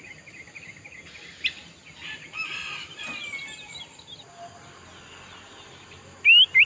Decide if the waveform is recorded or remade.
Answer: recorded